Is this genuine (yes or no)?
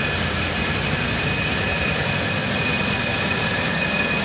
no